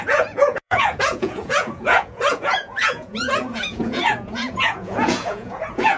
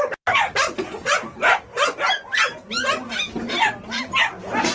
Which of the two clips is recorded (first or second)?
second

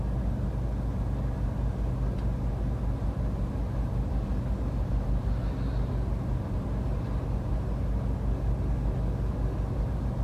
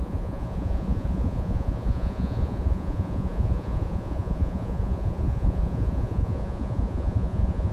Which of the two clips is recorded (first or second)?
first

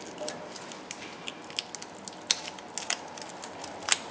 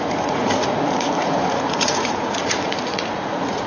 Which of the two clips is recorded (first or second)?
first